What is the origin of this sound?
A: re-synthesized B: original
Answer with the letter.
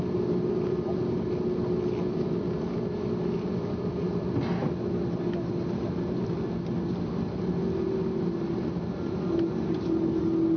B